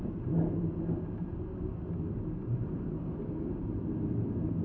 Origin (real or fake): real